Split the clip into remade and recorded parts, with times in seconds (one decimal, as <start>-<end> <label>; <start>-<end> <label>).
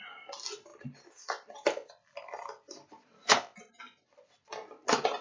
0.0-5.2 recorded